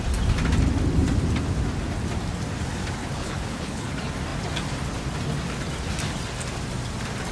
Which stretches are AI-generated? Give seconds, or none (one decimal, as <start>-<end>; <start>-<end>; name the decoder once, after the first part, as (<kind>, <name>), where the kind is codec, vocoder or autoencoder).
3.0-3.9 (codec, HILCodec)